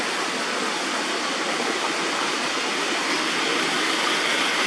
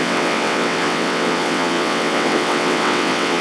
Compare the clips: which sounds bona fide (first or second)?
first